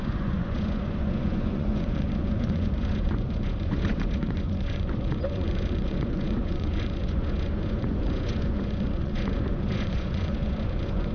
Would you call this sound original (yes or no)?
no